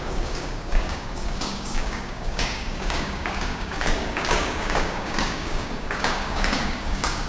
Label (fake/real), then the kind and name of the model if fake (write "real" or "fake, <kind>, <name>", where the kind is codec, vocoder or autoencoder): fake, codec, DAC